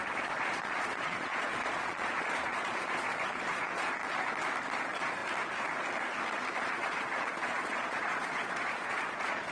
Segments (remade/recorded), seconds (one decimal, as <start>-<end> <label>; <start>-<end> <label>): 0.0-4.0 remade; 4.0-4.8 recorded; 4.8-5.2 remade; 5.2-6.6 recorded; 6.6-9.5 remade